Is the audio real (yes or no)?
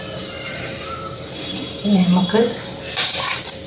no